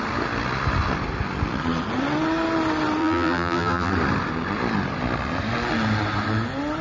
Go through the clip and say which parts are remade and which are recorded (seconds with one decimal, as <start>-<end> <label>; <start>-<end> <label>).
0.0-3.0 recorded; 3.0-3.9 remade; 3.9-6.8 recorded